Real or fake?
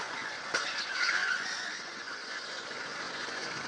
fake